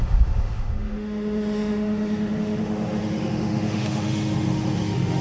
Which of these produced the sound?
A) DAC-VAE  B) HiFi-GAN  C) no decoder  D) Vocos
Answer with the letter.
A